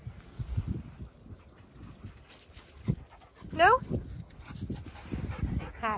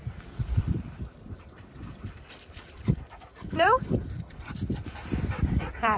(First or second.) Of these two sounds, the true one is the first